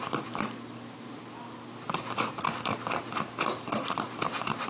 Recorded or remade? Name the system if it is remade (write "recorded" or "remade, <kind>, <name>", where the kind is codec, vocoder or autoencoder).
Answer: recorded